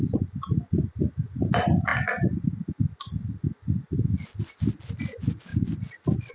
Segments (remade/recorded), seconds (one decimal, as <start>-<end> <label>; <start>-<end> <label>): 0.0-6.3 recorded